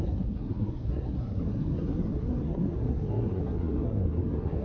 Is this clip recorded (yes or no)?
no